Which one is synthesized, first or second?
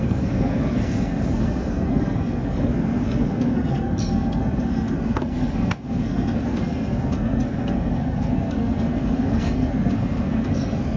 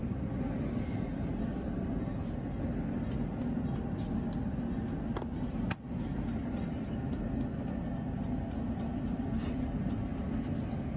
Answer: first